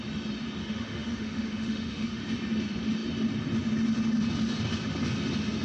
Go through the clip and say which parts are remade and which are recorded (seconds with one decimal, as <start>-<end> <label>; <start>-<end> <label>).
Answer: 0.0-0.6 recorded; 0.6-2.2 remade; 2.2-5.6 recorded